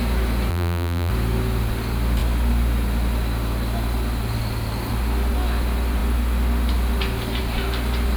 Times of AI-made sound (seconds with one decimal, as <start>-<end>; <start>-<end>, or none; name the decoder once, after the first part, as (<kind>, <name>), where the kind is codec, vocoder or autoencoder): 0.5-1.1 (vocoder, BigVGAN v2)